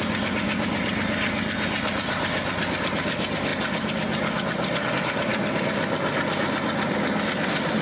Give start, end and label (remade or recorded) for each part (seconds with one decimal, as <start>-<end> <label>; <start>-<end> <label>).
0.0-7.8 recorded